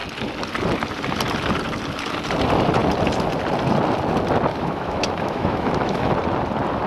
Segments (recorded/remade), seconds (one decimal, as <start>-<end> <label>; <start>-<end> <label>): 0.0-4.5 recorded; 4.5-6.1 remade; 6.1-6.9 recorded